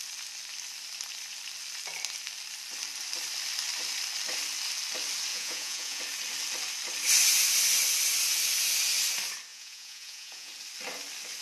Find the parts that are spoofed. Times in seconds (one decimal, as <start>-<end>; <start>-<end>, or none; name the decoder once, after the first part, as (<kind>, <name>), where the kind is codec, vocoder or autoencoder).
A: 5.3-6.0 (vocoder, Vocos); 9.5-10.5